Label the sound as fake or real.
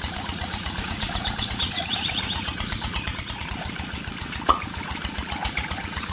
fake